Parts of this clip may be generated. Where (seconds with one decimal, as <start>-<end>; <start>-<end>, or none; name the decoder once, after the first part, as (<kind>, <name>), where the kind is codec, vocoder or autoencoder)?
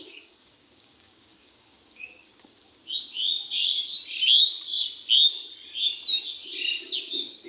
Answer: 0.0-2.6 (codec, DAC); 7.1-7.5